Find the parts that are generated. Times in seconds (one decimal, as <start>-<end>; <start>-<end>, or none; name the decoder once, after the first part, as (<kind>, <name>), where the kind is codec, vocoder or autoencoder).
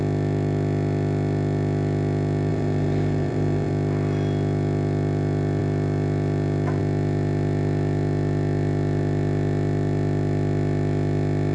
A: 2.5-3.7 (vocoder, BigVGAN v2)